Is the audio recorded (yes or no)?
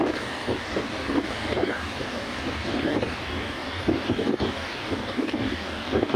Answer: no